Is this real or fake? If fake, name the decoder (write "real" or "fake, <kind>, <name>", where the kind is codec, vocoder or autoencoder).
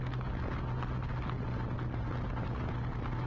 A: real